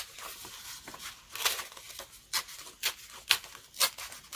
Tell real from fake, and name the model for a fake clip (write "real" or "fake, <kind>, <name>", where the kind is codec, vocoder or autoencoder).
real